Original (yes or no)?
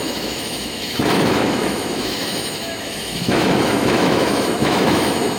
no